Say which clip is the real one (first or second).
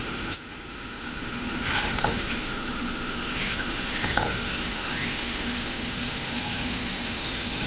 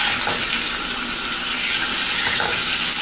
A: second